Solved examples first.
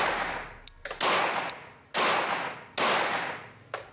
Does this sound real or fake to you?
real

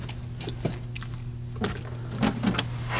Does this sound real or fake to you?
real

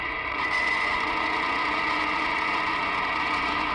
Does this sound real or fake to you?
fake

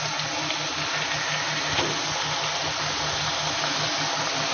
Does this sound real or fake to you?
real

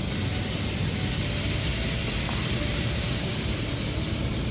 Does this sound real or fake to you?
real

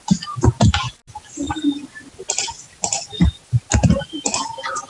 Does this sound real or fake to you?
real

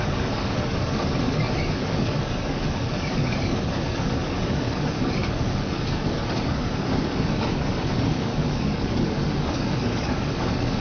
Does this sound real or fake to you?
fake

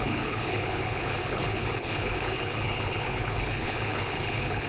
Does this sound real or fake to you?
fake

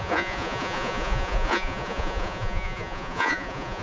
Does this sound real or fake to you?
fake